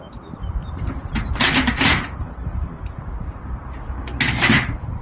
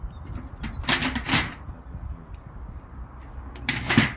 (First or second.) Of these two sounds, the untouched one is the second